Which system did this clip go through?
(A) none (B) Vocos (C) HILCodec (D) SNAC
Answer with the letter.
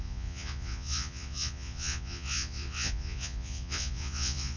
B